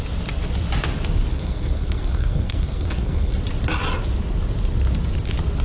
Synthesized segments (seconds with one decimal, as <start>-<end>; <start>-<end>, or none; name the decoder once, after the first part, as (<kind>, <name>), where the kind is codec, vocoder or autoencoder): 1.3-3.4 (codec, SNAC)